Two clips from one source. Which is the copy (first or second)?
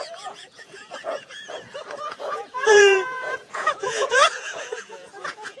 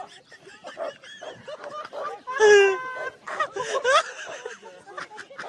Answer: first